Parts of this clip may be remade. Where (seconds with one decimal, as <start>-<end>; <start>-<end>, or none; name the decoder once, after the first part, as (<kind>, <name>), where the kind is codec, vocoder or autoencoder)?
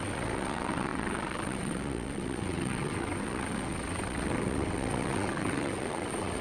0.0-6.4 (vocoder, WaveNeXt)